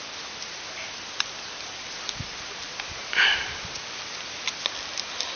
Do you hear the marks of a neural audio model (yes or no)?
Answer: no